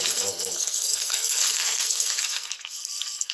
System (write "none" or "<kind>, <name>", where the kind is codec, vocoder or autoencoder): codec, SNAC